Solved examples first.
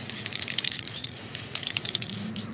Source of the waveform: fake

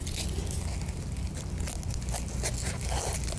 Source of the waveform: real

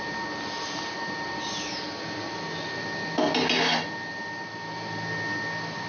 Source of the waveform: real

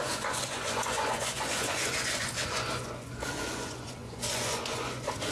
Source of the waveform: fake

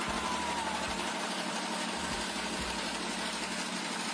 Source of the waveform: real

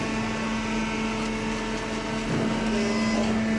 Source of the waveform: real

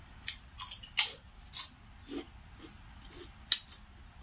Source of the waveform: real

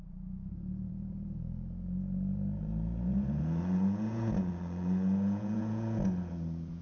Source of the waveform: fake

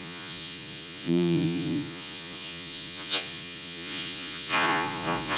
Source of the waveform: fake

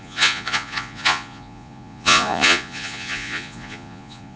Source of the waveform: fake